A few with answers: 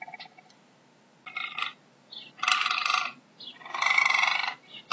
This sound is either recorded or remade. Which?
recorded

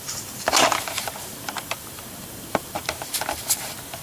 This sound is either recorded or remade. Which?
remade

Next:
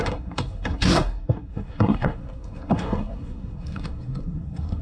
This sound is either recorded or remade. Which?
remade